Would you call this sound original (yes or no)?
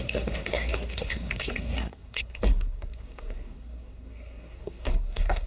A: no